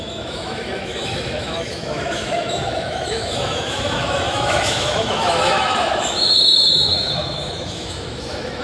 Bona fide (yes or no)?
no